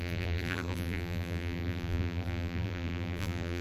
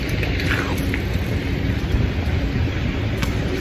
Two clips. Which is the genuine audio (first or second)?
second